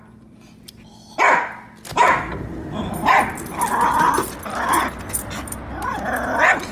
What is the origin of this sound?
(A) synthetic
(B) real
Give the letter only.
B